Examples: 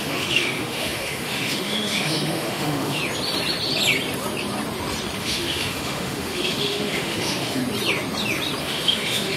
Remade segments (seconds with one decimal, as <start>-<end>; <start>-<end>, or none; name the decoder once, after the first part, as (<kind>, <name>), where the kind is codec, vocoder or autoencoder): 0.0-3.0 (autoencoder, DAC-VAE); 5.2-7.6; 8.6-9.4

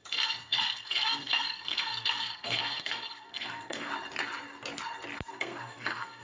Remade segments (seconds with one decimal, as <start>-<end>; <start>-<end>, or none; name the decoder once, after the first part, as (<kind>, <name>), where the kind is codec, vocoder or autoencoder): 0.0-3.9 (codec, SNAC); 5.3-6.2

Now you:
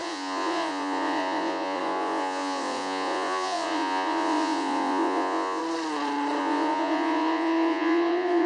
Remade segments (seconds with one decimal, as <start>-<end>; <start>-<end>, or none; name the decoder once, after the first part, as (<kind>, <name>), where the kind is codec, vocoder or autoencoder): 0.0-5.6 (vocoder, Vocos); 6.4-8.5

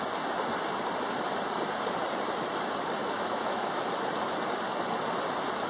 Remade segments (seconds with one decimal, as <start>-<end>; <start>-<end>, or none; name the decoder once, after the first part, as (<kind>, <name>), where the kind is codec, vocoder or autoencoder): 3.0-3.8 (autoencoder, DAC-VAE)